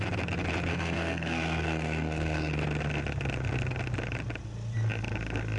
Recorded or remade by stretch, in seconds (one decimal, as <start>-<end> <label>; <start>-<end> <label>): 0.0-0.7 recorded; 0.7-2.5 remade; 2.5-5.6 recorded